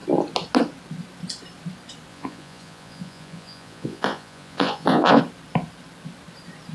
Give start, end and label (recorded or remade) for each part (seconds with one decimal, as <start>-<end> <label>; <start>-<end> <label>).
0.0-2.1 recorded; 2.1-5.2 remade; 5.2-6.7 recorded